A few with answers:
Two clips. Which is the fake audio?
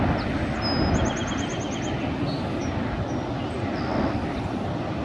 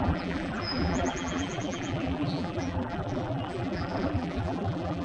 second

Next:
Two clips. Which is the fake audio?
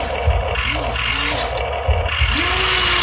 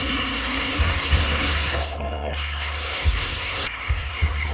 second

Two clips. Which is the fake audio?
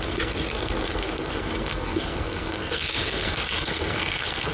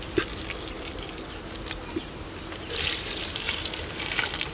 first